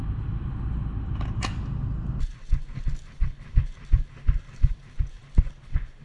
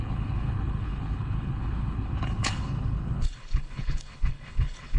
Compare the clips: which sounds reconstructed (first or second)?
second